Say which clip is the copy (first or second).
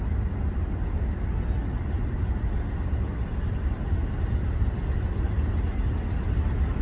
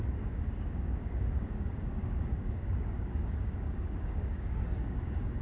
second